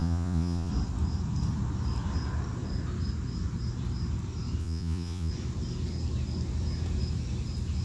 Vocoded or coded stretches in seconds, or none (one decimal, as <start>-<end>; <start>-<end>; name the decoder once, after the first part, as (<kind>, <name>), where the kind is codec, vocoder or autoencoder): 0.0-0.7 (vocoder, Vocos); 4.6-5.3